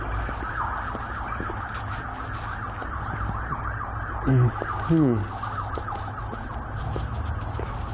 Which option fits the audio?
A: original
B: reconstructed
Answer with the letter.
A